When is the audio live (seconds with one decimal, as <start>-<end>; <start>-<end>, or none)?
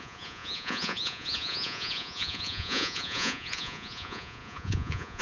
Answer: none